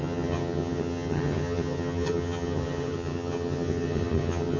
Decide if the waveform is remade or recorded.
remade